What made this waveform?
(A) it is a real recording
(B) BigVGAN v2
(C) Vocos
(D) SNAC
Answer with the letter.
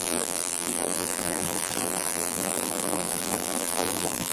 B